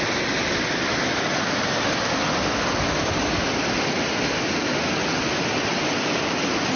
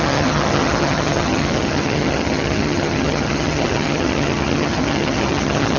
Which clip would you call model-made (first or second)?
second